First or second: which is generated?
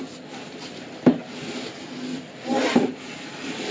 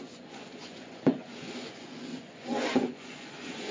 second